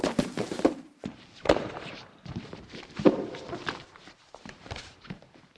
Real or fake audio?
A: fake